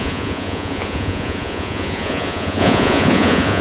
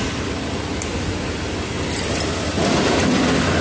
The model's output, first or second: first